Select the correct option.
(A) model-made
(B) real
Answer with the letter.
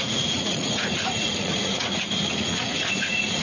A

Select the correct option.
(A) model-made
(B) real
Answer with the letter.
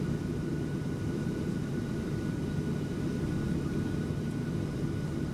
A